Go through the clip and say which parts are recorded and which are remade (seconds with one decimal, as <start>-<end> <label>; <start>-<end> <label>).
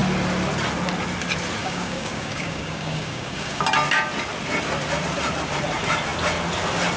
0.0-1.6 recorded; 1.6-3.6 remade; 3.6-7.0 recorded